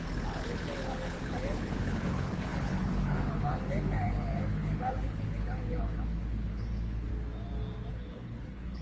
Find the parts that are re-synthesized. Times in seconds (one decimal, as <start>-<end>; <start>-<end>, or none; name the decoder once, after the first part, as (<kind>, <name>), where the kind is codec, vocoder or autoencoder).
0.0-7.1 (codec, HILCodec); 7.9-8.8